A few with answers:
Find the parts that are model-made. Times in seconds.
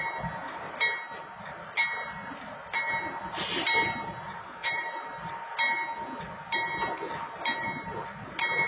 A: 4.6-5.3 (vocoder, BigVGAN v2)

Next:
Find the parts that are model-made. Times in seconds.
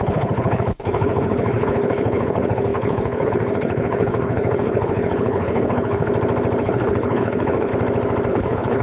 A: 0.0-6.1 (codec, HILCodec); 6.6-7.7; 8.3-8.8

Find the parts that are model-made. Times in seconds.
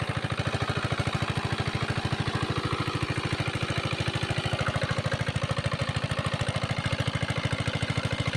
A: none